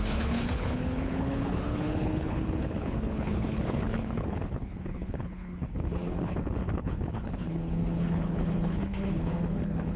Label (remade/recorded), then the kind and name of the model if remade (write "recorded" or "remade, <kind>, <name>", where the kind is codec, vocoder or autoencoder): remade, codec, HILCodec